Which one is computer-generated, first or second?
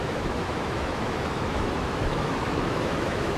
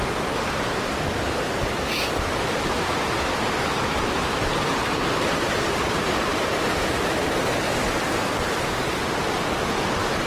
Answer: first